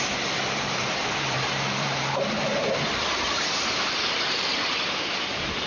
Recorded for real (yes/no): no